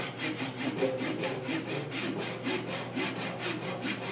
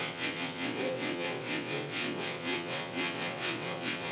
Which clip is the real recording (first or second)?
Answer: first